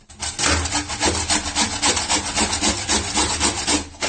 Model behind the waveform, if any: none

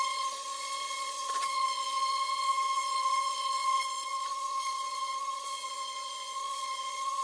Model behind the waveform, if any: vocoder, Vocos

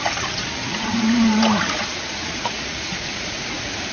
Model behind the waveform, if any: vocoder, Vocos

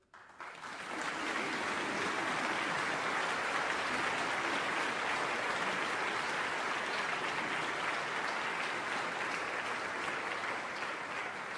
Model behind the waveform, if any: none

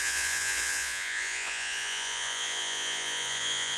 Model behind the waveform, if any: vocoder, Vocos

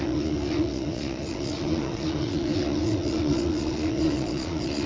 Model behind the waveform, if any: vocoder, Vocos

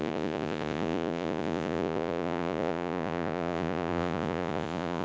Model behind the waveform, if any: vocoder, Vocos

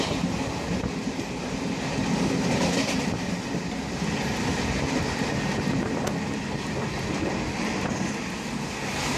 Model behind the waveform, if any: none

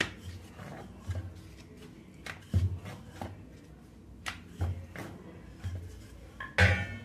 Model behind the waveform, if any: none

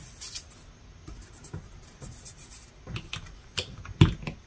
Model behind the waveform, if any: none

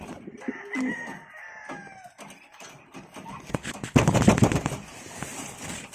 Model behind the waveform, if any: none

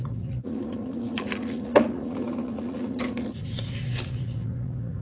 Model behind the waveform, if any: vocoder, Vocos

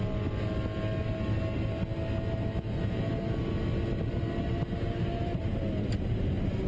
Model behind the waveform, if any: none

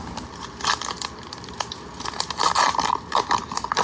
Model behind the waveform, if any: none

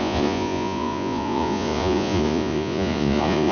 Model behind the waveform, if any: vocoder, Vocos